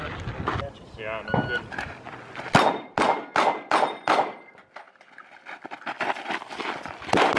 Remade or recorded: recorded